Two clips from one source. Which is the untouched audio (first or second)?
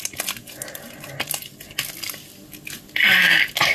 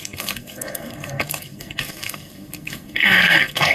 first